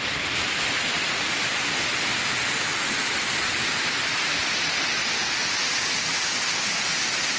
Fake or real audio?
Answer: real